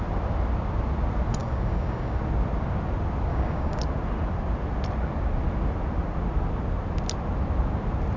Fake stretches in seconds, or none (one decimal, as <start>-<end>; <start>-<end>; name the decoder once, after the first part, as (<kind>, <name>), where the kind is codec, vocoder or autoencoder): 1.4-2.2 (codec, DAC); 3.3-3.8